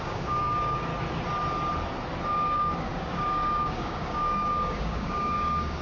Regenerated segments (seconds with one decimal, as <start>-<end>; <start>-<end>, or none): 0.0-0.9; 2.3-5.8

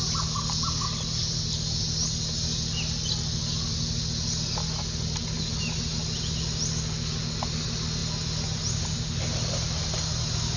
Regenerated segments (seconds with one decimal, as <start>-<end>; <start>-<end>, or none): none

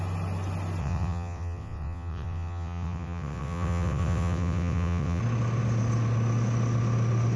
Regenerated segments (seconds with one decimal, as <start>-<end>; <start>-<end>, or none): 0.8-5.2

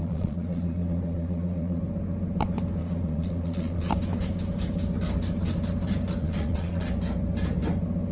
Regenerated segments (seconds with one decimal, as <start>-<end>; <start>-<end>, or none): 0.0-1.8; 2.8-3.9; 6.2-6.9

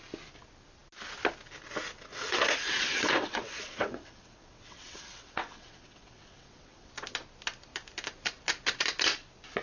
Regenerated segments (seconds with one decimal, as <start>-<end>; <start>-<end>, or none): 2.1-6.9

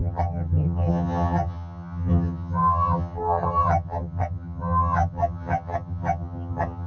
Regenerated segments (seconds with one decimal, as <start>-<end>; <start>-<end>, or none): 0.0-6.9

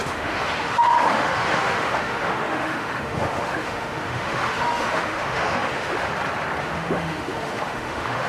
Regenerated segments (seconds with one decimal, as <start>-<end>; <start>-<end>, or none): 0.0-6.1; 6.6-8.3